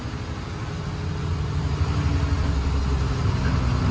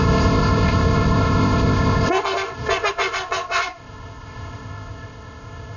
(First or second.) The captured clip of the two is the first